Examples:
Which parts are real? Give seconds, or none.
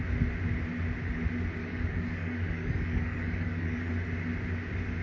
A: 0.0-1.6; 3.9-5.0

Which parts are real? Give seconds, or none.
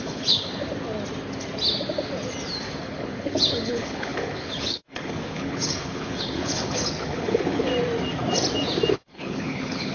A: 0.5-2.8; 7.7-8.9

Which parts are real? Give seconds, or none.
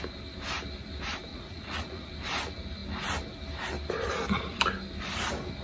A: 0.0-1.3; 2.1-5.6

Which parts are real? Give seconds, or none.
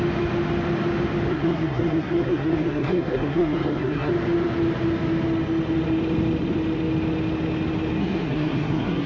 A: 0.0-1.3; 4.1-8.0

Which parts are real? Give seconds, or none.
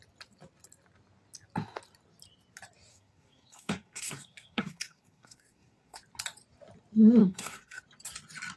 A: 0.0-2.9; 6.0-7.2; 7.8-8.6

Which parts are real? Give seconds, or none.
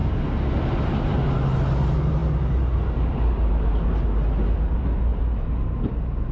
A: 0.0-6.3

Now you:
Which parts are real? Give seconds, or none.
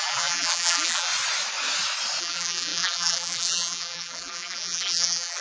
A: 1.1-2.2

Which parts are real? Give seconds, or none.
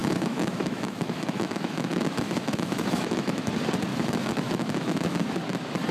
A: 3.5-3.9; 5.3-5.9